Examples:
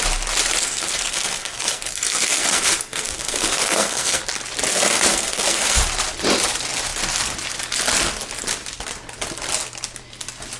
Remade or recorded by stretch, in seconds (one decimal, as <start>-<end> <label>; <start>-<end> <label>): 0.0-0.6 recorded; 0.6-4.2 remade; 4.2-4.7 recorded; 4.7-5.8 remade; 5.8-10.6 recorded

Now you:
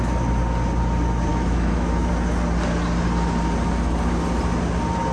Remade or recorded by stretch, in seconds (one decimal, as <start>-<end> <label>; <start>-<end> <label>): 0.0-1.3 recorded; 1.3-2.1 remade; 2.1-5.1 recorded

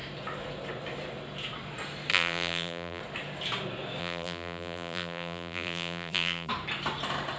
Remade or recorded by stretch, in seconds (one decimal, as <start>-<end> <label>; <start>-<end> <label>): 0.0-2.1 recorded; 2.1-3.0 remade; 3.0-4.0 recorded; 4.0-6.5 remade; 6.5-7.4 recorded

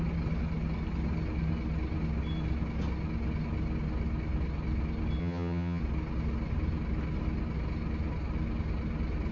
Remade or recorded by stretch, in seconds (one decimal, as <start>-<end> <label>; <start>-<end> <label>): 0.0-5.2 recorded; 5.2-5.8 remade; 5.8-9.3 recorded

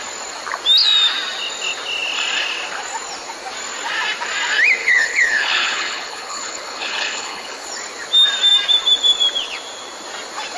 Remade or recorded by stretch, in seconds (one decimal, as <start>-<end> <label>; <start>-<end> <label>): 0.0-4.8 recorded; 4.8-7.7 remade; 7.7-10.6 recorded

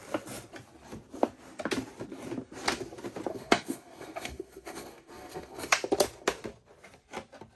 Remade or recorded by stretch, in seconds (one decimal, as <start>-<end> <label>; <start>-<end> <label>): 0.0-3.3 recorded; 3.3-5.7 remade; 5.7-7.6 recorded